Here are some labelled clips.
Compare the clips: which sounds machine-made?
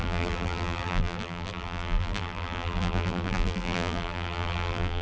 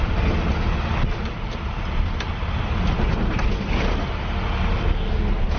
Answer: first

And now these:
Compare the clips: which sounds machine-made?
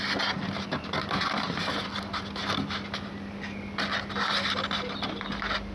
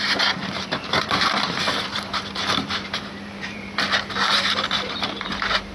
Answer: second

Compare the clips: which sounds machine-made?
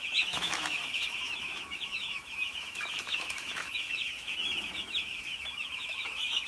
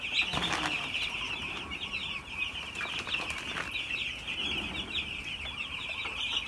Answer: first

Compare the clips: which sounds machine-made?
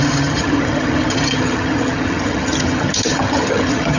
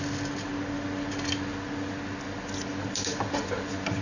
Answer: first